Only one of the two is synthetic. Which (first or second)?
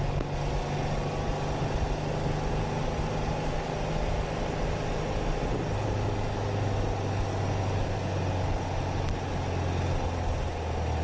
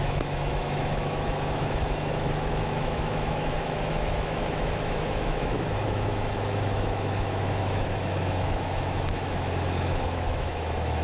second